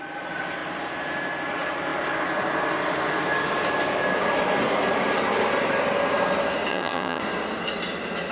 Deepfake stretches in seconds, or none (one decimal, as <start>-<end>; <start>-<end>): 6.7-7.2